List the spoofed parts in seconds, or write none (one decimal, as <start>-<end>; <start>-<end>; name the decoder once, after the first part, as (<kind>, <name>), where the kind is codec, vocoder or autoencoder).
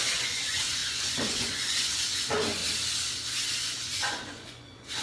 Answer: 0.0-2.6 (vocoder, Vocos); 3.6-5.0